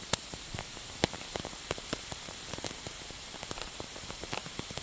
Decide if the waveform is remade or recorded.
remade